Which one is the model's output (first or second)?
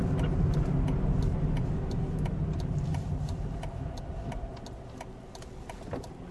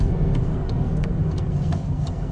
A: second